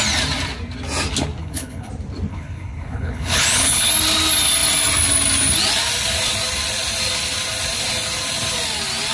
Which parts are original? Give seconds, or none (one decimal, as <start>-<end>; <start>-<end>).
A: 0.0-1.4; 1.9-2.3; 3.9-9.1